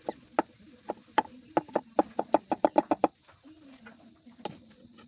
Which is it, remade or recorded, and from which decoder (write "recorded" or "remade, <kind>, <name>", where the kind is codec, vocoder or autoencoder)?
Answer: recorded